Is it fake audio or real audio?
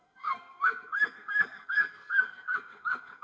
fake